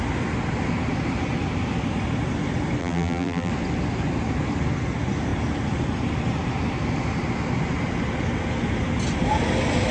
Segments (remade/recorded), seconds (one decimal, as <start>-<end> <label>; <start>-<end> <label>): 0.0-2.8 recorded; 2.8-3.5 remade; 3.5-9.9 recorded

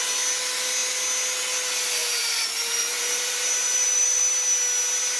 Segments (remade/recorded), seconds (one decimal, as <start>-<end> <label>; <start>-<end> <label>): 0.0-2.0 recorded; 2.0-4.3 remade; 4.3-5.2 recorded

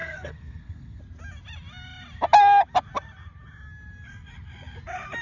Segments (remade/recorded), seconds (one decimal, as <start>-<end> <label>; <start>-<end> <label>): 0.0-1.0 remade; 1.0-5.2 recorded